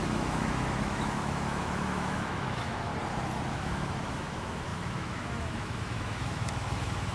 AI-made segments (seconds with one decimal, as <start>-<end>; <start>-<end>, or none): 0.0-2.9; 3.5-7.1